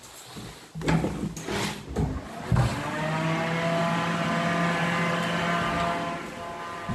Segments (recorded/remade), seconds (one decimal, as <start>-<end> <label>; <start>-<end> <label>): 0.0-6.9 recorded